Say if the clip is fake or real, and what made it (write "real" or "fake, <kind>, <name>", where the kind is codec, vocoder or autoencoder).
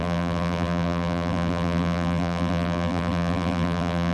fake, vocoder, BigVGAN v2